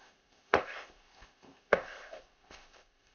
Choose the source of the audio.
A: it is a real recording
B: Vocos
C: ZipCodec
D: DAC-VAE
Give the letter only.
C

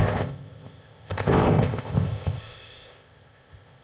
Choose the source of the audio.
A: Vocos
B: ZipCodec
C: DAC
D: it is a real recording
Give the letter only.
B